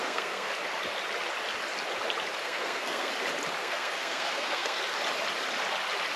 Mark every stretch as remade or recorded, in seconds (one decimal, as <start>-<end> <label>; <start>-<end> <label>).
0.0-0.5 remade; 0.5-2.4 recorded; 2.4-3.1 remade; 3.1-3.6 recorded; 3.6-4.8 remade; 4.8-6.2 recorded